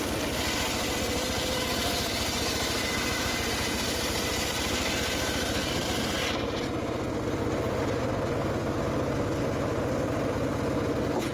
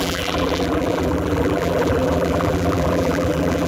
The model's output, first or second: second